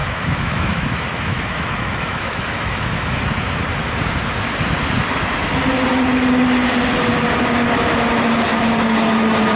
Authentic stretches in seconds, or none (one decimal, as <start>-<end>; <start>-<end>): 3.2-9.6